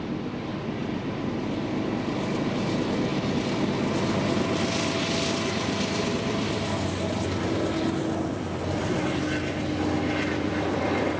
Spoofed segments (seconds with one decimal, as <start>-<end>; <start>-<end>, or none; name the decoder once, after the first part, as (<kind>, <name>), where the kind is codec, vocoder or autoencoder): 0.8-1.3 (vocoder, BigVGAN v2)